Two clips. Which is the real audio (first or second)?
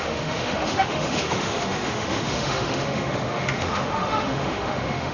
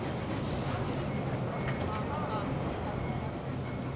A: second